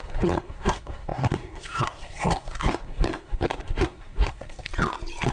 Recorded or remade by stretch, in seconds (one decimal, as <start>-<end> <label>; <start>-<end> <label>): 0.0-4.7 remade; 4.7-5.3 recorded